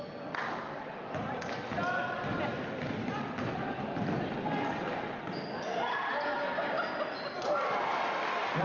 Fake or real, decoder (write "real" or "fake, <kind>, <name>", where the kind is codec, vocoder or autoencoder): real